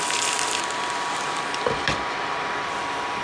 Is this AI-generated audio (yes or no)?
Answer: yes